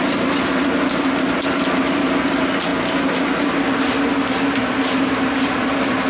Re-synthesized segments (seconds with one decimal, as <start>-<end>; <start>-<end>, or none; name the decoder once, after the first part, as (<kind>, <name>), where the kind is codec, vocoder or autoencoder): none